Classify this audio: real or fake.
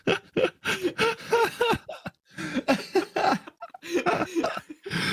real